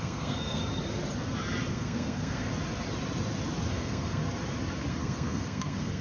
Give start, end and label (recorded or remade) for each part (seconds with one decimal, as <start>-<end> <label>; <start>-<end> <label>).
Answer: 0.0-0.6 remade; 0.6-1.7 recorded; 1.7-2.5 remade; 2.5-3.7 recorded; 3.7-4.2 remade; 4.2-4.9 recorded; 4.9-6.0 remade